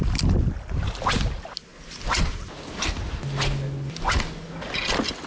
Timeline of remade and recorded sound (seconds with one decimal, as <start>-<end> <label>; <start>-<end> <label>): 0.0-5.3 recorded